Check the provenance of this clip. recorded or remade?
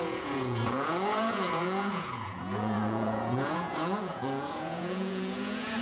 remade